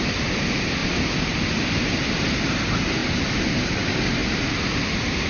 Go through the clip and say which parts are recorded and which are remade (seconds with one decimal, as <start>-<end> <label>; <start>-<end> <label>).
0.0-0.8 recorded; 0.8-1.8 remade; 1.8-3.0 recorded; 3.0-3.8 remade; 3.8-4.2 recorded; 4.2-5.3 remade